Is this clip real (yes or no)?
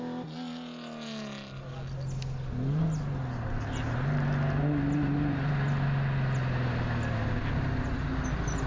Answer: yes